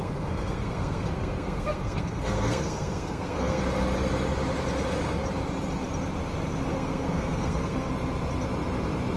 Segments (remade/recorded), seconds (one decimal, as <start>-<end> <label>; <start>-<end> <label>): 0.0-3.6 remade; 3.6-6.7 recorded; 6.7-7.9 remade; 7.9-9.2 recorded

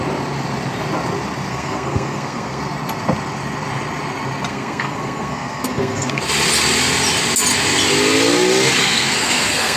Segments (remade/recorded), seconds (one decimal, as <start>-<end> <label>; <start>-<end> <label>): 0.0-1.5 recorded; 1.5-2.6 remade; 2.6-4.5 recorded; 4.5-6.2 remade; 6.2-8.8 recorded; 8.8-9.8 remade

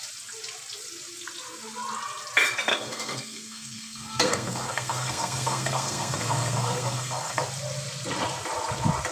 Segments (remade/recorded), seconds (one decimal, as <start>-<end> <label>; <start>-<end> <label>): 0.0-2.7 recorded; 2.7-7.4 remade; 7.4-9.1 recorded

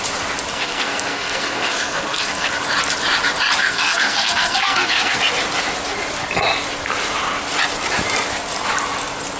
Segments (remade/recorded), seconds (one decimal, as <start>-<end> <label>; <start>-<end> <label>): 0.0-0.5 recorded; 0.5-2.5 remade; 2.5-3.6 recorded; 3.6-5.2 remade; 5.2-9.4 recorded

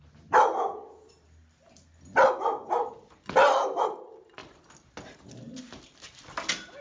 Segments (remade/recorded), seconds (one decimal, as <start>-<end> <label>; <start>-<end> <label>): 0.0-6.8 recorded